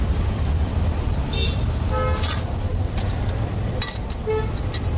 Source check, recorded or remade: recorded